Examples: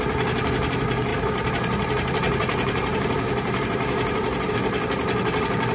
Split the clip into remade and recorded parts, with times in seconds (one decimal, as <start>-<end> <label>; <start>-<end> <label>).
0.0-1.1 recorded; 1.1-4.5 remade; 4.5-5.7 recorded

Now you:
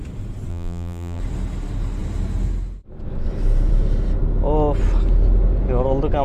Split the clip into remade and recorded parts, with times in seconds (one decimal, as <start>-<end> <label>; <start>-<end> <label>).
0.0-0.5 recorded; 0.5-1.2 remade; 1.2-6.2 recorded

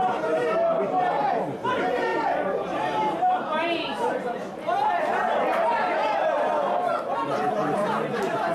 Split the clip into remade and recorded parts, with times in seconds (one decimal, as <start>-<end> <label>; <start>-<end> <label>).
0.0-6.2 remade; 6.2-7.3 recorded; 7.3-8.5 remade

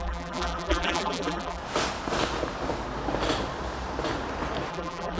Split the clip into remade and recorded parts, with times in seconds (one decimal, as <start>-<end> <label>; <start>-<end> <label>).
0.0-1.6 remade; 1.6-4.7 recorded; 4.7-5.2 remade

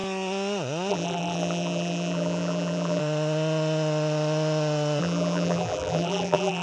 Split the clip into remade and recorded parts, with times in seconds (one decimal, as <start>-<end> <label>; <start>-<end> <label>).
0.0-0.9 recorded; 0.9-3.0 remade; 3.0-5.0 recorded; 5.0-6.6 remade

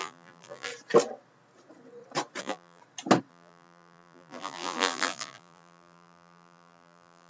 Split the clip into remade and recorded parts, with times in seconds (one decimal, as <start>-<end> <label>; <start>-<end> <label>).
0.0-0.7 remade; 0.7-2.4 recorded; 2.4-2.8 remade; 2.8-3.3 recorded; 3.3-7.3 remade

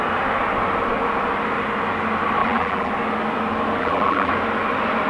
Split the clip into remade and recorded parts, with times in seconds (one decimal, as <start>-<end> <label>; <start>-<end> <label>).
0.0-2.4 recorded; 2.4-2.9 remade; 2.9-3.8 recorded; 3.8-4.3 remade; 4.3-5.1 recorded